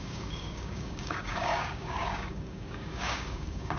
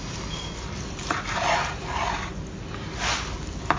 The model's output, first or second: first